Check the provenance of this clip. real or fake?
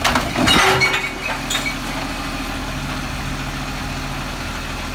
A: real